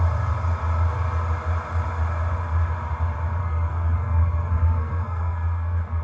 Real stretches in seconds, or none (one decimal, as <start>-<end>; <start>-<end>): 0.0-3.4